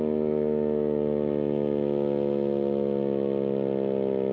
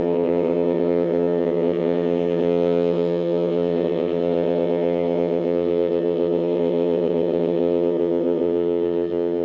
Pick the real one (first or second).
first